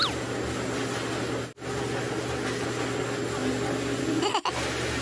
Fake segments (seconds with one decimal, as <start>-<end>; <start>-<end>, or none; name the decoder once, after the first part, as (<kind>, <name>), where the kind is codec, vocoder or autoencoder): none